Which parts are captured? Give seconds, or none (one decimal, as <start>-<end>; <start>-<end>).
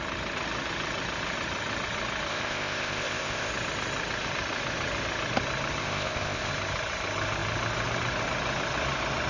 0.0-2.3; 3.5-5.8; 6.5-9.3